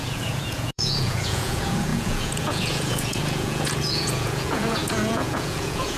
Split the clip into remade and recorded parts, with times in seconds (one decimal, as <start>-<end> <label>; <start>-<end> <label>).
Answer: 0.0-6.0 remade